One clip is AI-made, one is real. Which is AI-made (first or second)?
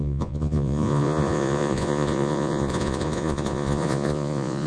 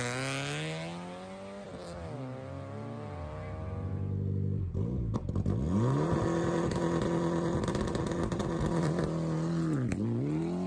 first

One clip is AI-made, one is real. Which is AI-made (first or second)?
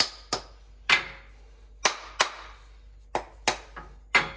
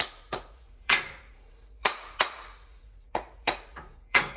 second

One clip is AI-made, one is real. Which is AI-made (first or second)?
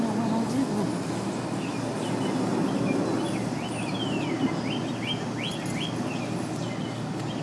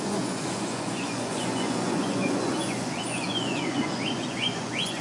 second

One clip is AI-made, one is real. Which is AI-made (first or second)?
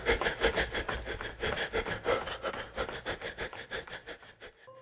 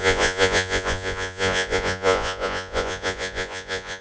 second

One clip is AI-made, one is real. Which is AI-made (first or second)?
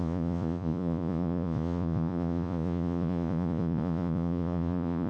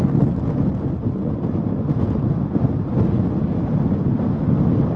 first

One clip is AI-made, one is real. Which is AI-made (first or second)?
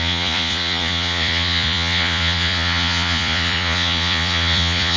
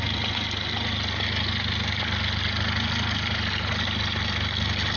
first